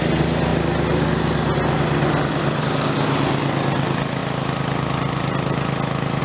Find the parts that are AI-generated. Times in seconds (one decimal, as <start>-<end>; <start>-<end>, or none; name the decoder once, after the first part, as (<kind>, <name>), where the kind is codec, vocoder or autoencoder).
none